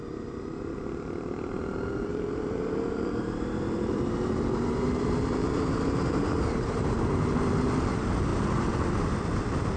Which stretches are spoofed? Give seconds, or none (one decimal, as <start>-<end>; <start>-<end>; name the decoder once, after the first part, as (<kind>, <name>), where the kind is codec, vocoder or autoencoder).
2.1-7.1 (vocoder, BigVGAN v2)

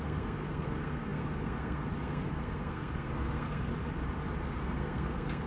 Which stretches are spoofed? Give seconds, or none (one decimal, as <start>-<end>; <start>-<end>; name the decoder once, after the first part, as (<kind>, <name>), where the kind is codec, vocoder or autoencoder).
0.0-3.7 (codec, SNAC); 4.4-5.5

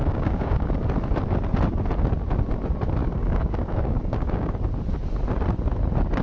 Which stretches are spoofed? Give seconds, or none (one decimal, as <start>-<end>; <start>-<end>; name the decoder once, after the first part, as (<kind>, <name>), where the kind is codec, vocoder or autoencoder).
0.0-0.7 (codec, DAC); 3.0-4.5

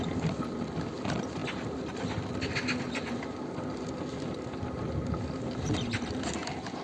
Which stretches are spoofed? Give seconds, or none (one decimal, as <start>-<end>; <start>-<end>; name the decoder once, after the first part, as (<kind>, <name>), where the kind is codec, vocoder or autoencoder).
none

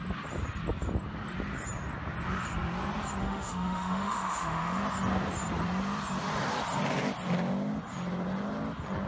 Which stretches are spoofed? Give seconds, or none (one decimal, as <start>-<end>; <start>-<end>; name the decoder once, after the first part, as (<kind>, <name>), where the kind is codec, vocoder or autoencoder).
3.2-4.8 (autoencoder, DAC-VAE)

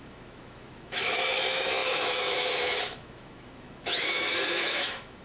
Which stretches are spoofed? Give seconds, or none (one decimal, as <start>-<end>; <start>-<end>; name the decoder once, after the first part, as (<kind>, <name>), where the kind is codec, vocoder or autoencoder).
0.0-5.2 (autoencoder, DAC-VAE)

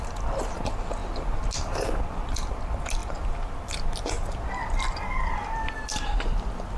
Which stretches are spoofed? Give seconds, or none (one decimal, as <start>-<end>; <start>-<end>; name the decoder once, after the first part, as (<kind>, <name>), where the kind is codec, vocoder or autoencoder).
none